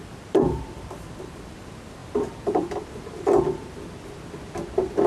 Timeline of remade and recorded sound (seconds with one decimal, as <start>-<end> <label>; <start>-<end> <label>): 0.0-2.0 remade; 2.0-5.1 recorded